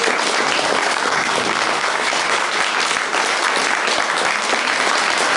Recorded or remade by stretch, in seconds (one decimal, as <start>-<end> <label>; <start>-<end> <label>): 0.0-0.8 recorded; 0.8-2.6 remade; 2.6-5.4 recorded